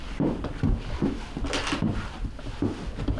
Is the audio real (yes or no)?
yes